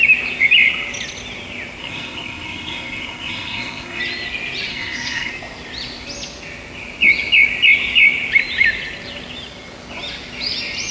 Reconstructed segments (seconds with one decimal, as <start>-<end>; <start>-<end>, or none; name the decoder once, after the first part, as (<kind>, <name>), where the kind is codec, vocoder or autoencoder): 1.8-4.0 (codec, SNAC); 4.7-5.3